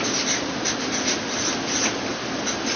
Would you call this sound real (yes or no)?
yes